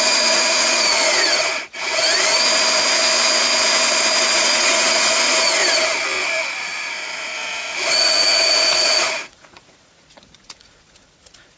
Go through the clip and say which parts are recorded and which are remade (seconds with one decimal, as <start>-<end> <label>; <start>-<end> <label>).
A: 0.0-1.9 remade; 1.9-4.3 recorded; 4.3-5.6 remade; 5.6-7.9 recorded; 7.9-11.6 remade